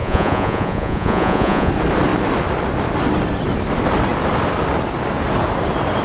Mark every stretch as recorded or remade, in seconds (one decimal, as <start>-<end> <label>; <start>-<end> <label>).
0.0-1.7 remade; 1.7-6.0 recorded